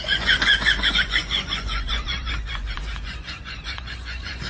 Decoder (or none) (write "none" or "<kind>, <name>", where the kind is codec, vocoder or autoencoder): vocoder, Vocos